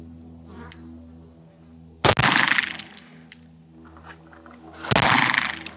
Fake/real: real